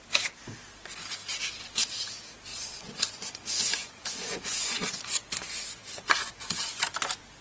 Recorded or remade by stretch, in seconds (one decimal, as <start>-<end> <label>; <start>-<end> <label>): 0.0-2.5 recorded; 2.5-6.8 remade; 6.8-7.4 recorded